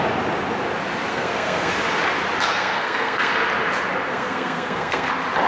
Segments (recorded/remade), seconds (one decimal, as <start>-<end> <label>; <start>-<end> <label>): 0.0-1.1 recorded; 1.1-1.7 remade; 1.7-2.5 recorded; 2.5-3.3 remade; 3.3-4.1 recorded; 4.1-5.1 remade; 5.1-5.5 recorded